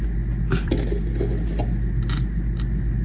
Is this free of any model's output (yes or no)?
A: yes